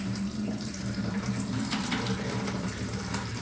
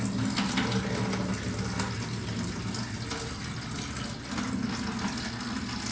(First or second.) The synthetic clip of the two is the first